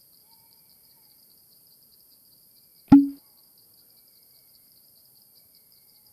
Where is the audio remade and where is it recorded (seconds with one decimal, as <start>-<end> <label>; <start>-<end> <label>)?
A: 0.0-2.7 remade; 2.7-4.1 recorded; 4.1-6.1 remade